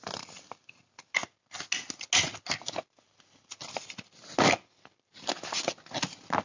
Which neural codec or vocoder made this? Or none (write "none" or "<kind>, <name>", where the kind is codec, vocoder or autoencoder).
none